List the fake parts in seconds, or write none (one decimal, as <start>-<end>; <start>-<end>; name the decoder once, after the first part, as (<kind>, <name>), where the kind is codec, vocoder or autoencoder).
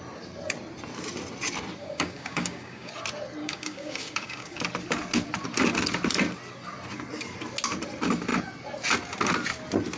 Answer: 1.8-2.9 (codec, DAC); 3.4-4.6